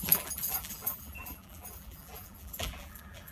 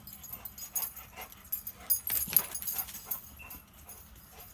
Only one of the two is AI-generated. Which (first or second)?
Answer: first